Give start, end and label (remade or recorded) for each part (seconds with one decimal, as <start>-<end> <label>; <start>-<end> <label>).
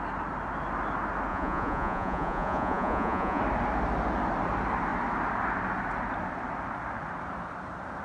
0.0-1.3 recorded; 1.3-3.4 remade; 3.4-8.0 recorded